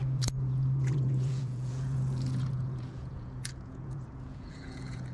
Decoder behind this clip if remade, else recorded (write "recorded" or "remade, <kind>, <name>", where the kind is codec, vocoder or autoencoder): remade, vocoder, Vocos